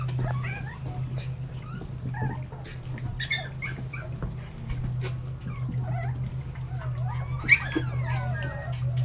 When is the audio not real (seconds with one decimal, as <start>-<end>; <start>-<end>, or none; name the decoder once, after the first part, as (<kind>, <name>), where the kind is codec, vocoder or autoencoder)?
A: none